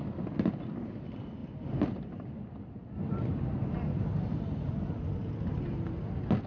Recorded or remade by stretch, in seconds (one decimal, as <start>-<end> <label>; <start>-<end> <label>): 0.0-6.5 recorded